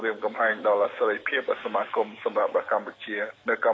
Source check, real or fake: fake